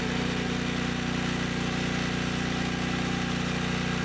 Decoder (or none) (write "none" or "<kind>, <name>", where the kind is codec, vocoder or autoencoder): none